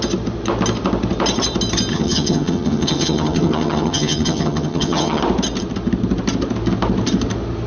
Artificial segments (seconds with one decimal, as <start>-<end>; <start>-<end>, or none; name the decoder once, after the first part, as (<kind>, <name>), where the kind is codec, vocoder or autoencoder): 1.9-5.2 (vocoder, HiFi-GAN)